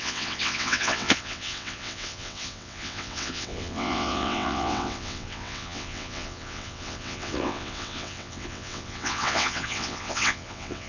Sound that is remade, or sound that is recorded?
remade